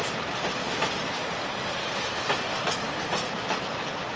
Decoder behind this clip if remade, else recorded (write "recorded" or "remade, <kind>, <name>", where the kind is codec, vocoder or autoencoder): recorded